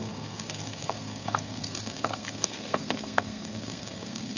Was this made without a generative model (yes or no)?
no